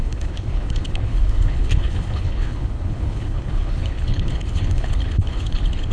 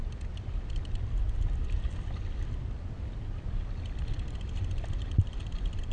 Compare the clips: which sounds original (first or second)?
second